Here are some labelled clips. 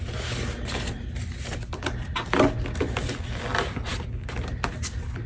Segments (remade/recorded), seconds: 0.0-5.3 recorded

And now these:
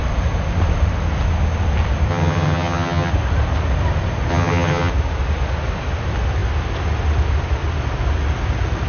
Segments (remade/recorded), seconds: 0.0-2.1 recorded; 2.1-3.1 remade; 3.1-4.3 recorded; 4.3-4.9 remade; 4.9-8.9 recorded

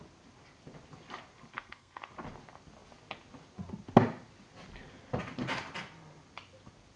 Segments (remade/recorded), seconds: 0.0-1.5 recorded; 1.5-2.1 remade; 2.1-7.0 recorded

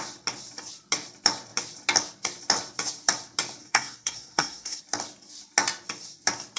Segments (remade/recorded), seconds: 0.0-3.6 recorded; 3.6-4.8 remade; 4.8-6.6 recorded

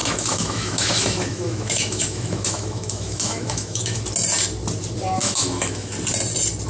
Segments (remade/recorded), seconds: 0.0-4.0 remade; 4.0-5.2 recorded; 5.2-5.9 remade; 5.9-6.7 recorded

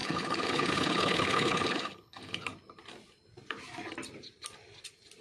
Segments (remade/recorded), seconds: 0.0-2.5 remade; 2.5-5.2 recorded

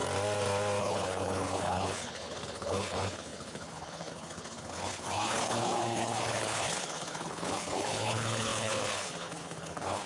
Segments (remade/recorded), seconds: 0.0-0.8 recorded; 0.8-10.1 remade

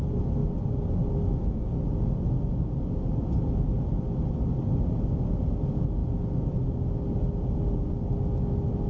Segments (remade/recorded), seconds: 0.0-8.9 recorded